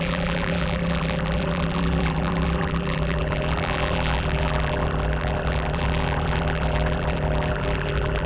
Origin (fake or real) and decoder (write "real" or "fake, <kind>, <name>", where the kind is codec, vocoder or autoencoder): fake, vocoder, BigVGAN v2